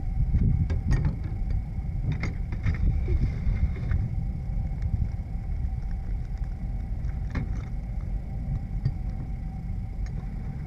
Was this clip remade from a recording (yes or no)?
yes